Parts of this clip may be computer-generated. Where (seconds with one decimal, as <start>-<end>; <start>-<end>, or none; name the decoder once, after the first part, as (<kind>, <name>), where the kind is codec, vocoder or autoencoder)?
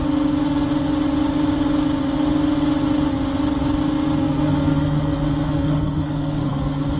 4.2-7.0 (codec, SNAC)